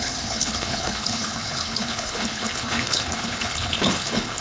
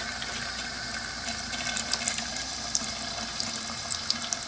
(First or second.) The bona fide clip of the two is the second